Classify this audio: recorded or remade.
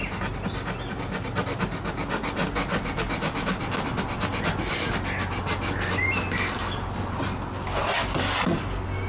recorded